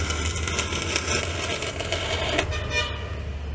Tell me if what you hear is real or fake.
real